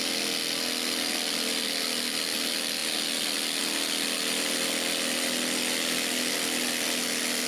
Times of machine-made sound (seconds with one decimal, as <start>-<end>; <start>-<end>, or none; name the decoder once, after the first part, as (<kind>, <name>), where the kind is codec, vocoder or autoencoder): none